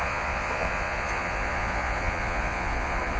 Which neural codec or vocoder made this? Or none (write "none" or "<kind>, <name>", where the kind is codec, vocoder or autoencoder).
vocoder, Vocos